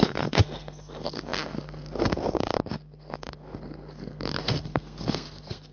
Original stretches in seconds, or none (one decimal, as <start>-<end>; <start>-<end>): none